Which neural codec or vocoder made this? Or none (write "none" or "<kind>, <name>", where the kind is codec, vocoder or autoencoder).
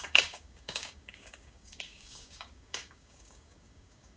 codec, DAC